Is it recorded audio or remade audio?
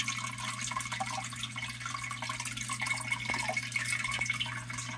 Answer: recorded